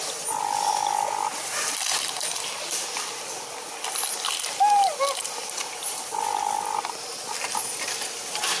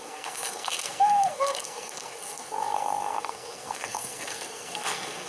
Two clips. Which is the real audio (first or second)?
first